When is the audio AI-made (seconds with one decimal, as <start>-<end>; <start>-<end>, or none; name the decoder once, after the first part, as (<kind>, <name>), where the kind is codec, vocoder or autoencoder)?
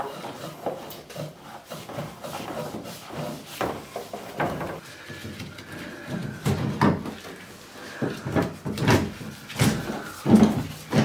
none